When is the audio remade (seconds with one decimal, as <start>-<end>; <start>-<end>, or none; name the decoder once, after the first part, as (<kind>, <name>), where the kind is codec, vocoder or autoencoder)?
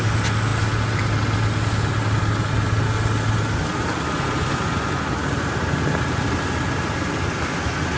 none